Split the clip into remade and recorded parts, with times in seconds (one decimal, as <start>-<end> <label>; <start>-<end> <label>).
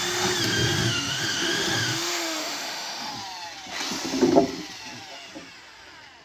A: 0.0-0.8 recorded; 0.8-3.1 remade; 3.1-6.2 recorded